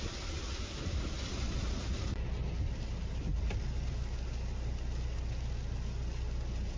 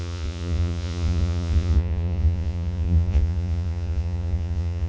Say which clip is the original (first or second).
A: first